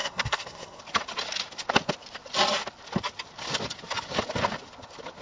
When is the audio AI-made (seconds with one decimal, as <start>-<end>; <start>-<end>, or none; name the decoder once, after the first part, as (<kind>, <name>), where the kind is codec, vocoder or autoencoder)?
0.0-0.8 (codec, SNAC)